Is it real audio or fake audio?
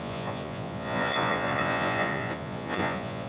fake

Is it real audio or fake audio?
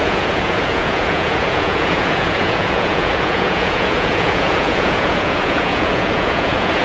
fake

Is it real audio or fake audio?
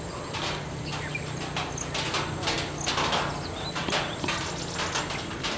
real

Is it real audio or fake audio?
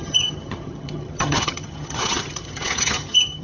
fake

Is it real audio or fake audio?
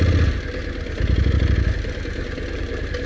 real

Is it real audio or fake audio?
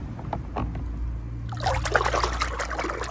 real